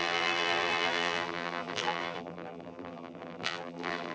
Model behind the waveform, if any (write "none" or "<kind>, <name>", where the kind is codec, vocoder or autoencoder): vocoder, BigVGAN v2